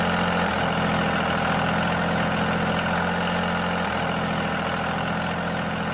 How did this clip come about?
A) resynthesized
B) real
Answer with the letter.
B